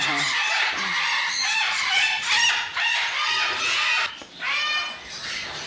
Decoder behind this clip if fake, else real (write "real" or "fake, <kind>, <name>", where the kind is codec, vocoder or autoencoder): real